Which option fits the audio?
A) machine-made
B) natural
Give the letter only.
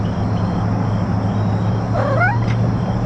B